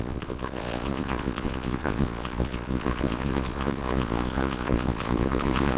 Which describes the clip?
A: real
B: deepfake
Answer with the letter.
B